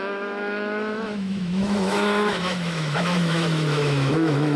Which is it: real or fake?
fake